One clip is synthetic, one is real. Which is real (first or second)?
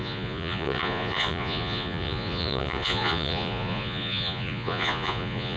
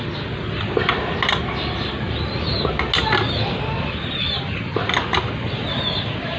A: second